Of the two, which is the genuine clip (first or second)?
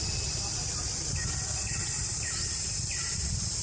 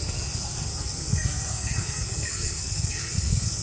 first